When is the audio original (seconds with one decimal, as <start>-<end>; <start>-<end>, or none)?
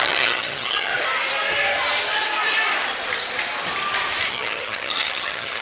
0.9-4.3